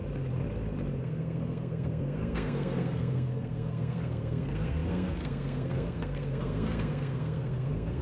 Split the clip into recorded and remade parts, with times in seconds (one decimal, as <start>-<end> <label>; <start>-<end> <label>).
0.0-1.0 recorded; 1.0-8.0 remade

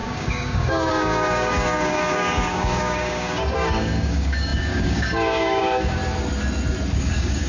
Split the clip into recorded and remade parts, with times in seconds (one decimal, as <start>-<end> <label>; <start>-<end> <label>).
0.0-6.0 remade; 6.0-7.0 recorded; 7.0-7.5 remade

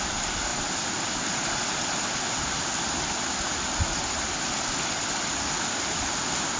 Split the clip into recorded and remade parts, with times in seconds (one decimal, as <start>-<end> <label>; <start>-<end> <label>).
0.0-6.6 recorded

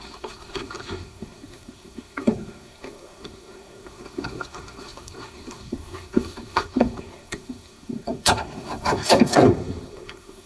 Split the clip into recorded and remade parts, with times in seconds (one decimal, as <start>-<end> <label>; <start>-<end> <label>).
0.0-10.5 remade

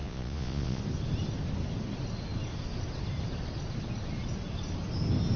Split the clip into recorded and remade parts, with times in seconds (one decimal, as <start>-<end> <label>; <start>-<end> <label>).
0.0-0.8 remade; 0.8-5.4 recorded